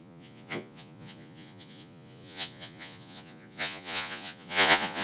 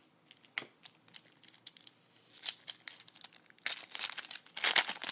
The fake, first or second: first